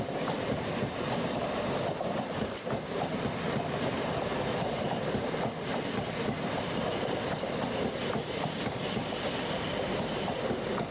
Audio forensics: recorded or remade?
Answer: recorded